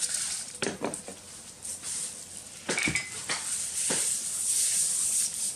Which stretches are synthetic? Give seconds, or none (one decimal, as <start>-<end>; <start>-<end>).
0.0-1.1; 4.5-5.6